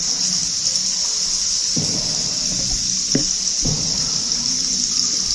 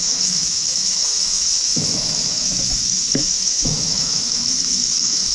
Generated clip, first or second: second